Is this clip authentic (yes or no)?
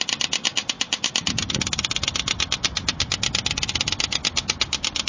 yes